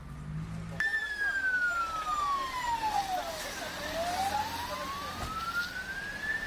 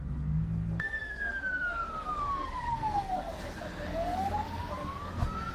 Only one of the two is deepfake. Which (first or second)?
second